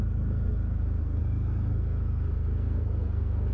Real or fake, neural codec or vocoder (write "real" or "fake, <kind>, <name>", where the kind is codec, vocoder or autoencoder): fake, codec, SNAC